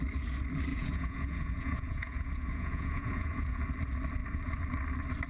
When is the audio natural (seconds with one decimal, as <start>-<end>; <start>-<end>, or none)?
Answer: 0.0-0.7; 3.6-5.3